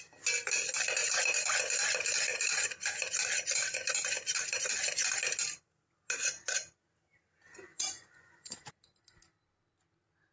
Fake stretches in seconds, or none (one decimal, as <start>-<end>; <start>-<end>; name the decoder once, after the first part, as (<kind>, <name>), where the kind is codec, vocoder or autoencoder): 7.7-8.7 (vocoder, Vocos)